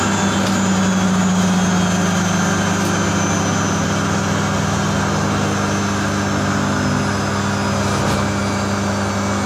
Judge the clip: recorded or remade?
recorded